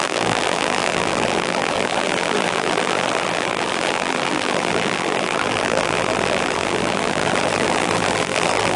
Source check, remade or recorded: remade